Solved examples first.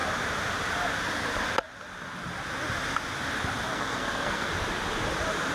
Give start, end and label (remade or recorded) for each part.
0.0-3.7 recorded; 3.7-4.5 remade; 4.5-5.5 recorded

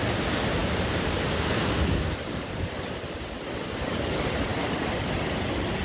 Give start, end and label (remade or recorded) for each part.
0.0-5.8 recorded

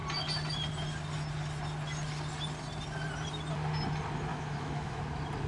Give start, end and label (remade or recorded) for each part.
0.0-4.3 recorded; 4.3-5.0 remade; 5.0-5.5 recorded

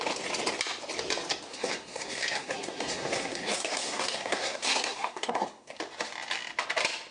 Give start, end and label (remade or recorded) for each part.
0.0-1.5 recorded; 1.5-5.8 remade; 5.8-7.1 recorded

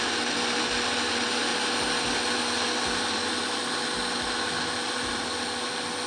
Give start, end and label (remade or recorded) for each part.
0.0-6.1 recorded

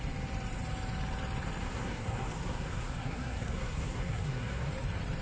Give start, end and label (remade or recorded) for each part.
0.0-1.6 recorded; 1.6-4.7 remade; 4.7-5.2 recorded

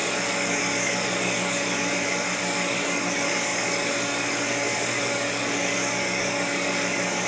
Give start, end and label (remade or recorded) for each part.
0.0-7.3 remade

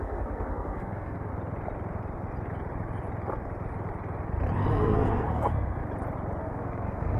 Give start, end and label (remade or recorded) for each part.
0.0-1.3 remade; 1.3-4.7 recorded; 4.7-5.8 remade; 5.8-6.4 recorded; 6.4-7.2 remade